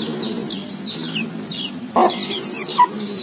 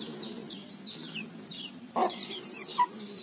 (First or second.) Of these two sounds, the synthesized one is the second